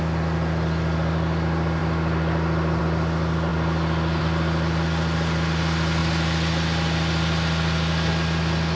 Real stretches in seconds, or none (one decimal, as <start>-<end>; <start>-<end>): 0.0-8.8